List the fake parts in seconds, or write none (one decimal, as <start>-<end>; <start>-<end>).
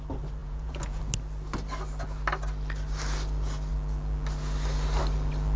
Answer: 0.4-1.0